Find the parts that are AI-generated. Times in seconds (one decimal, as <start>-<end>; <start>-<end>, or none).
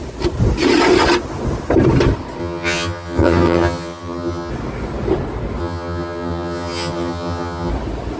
2.4-4.5; 5.6-7.7